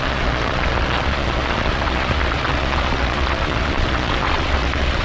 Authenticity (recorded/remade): remade